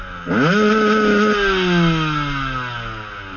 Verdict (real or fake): real